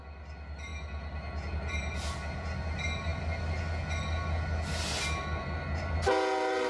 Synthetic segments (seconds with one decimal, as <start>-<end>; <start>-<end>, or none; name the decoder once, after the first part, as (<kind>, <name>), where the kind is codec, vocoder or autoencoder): none